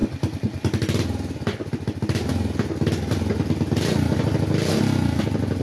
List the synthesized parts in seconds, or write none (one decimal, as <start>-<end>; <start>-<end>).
none